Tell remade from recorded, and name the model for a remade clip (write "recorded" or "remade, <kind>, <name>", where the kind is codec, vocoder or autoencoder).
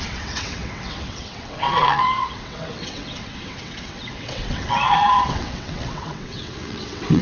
remade, vocoder, WaveNeXt